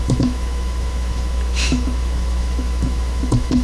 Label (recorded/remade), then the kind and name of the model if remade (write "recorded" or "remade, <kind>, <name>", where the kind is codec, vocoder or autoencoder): remade, autoencoder, DAC-VAE